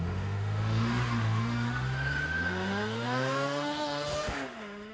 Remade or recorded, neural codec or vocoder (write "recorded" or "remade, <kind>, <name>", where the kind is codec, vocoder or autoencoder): remade, autoencoder, DAC-VAE